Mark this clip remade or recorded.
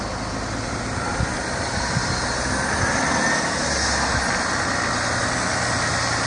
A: recorded